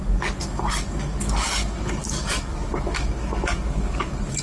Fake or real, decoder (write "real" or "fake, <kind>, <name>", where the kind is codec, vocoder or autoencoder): fake, codec, DAC